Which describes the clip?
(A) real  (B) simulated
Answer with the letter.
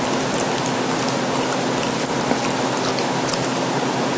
A